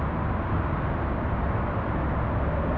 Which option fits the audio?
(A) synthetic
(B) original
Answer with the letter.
B